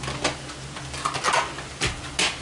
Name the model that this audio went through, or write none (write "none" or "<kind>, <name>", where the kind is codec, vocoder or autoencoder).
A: none